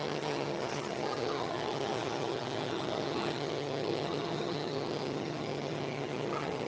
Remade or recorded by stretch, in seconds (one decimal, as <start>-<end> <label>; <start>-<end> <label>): 0.0-6.7 remade